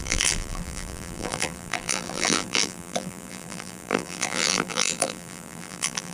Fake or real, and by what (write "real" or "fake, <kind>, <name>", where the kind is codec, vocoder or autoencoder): fake, vocoder, BigVGAN v2